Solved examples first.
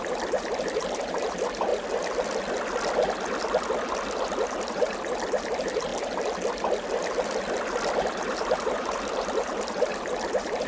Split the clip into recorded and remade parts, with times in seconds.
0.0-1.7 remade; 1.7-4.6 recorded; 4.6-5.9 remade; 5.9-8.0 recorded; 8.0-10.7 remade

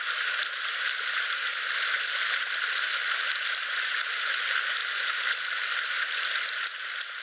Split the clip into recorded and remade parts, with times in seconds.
0.0-1.5 recorded; 1.5-4.0 remade; 4.0-7.2 recorded

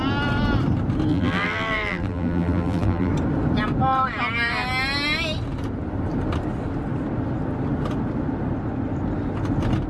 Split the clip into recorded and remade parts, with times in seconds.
0.0-1.1 recorded; 1.1-3.1 remade; 3.1-9.9 recorded

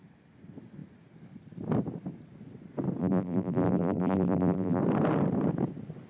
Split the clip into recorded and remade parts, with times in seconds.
0.0-3.0 recorded; 3.0-4.8 remade; 4.8-6.1 recorded

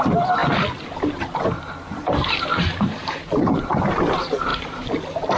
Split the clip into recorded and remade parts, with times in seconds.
0.0-2.5 recorded; 2.5-4.0 remade; 4.0-4.5 recorded; 4.5-5.0 remade; 5.0-5.4 recorded

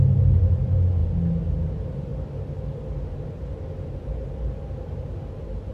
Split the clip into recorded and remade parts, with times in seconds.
0.0-5.7 recorded